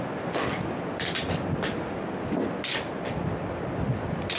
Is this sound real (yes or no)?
yes